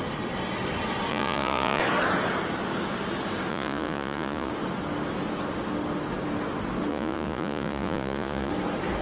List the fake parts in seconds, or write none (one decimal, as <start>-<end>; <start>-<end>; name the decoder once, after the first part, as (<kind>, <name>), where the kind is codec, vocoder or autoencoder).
1.1-1.8 (vocoder, Vocos); 3.5-4.5; 6.9-8.5